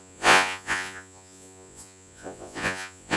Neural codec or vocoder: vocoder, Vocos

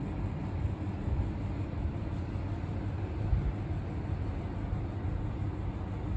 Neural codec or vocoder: none